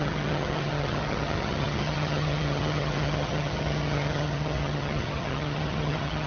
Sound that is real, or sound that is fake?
fake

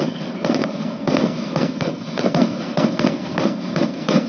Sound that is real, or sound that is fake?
fake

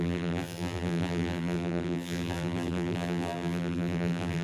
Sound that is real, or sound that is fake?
fake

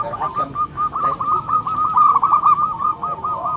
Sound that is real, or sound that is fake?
real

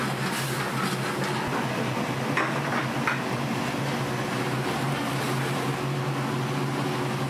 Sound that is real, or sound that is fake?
real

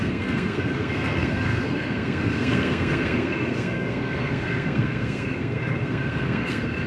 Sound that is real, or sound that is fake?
fake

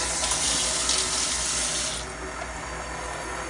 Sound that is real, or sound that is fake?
real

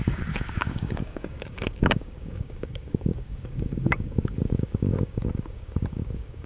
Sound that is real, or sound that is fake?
fake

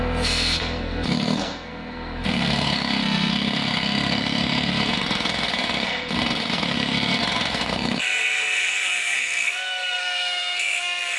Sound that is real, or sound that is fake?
fake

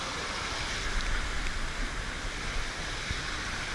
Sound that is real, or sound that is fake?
real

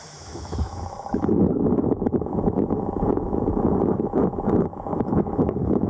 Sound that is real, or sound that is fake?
fake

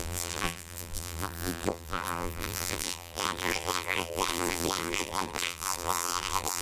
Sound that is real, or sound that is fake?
fake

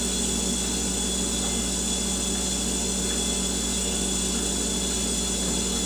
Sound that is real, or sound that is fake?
real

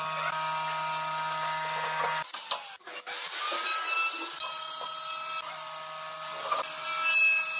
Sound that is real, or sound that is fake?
real